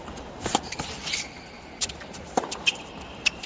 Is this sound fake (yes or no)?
yes